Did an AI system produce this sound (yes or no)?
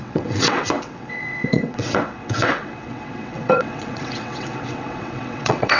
yes